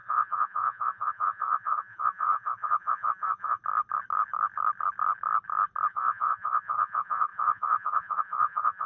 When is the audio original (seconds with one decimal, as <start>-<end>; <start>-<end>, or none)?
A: 3.6-5.9